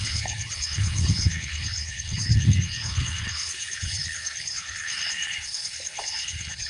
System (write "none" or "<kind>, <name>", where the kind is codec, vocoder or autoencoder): codec, HILCodec